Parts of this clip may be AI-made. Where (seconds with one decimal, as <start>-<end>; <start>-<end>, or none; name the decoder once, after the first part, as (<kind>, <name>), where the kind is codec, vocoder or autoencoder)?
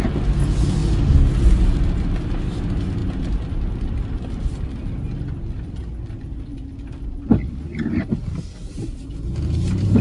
none